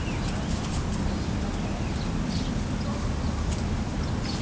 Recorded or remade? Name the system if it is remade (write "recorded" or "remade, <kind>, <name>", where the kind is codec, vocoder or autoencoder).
recorded